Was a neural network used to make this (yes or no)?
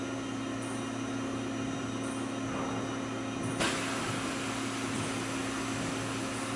no